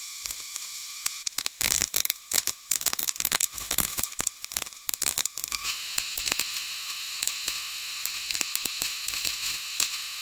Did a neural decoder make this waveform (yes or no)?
yes